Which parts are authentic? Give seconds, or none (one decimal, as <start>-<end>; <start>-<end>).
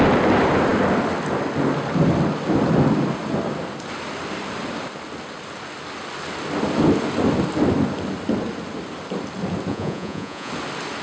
0.0-9.7; 10.5-11.0